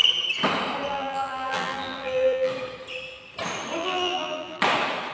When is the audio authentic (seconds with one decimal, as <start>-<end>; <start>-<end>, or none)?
0.0-0.9; 2.5-3.8; 4.6-5.1